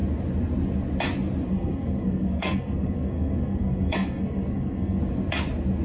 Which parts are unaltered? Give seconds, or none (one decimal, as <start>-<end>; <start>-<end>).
0.0-1.5; 5.0-5.8